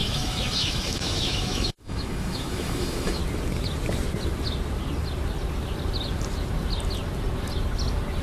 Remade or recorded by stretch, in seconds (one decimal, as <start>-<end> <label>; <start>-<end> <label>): 0.0-3.2 remade; 3.2-8.2 recorded